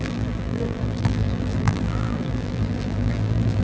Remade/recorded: remade